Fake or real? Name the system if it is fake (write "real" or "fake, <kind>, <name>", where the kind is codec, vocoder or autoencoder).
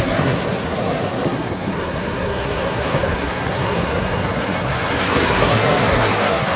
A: fake, codec, SNAC